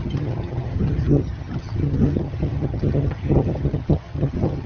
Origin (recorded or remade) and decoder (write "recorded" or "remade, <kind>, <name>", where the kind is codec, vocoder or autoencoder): remade, vocoder, HiFi-GAN